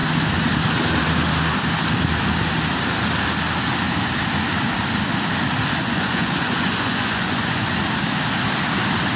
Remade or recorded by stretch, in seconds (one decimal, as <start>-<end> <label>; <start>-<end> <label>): 0.0-5.8 recorded; 5.8-7.7 remade; 7.7-9.2 recorded